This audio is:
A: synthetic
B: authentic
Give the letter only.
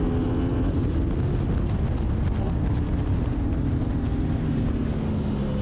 B